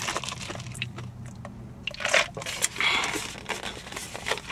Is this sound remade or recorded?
recorded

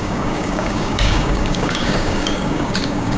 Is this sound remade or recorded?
remade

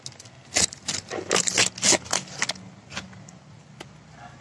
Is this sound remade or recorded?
recorded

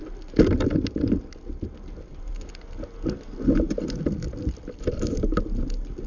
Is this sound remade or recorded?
recorded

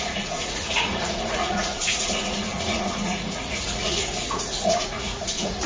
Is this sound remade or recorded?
remade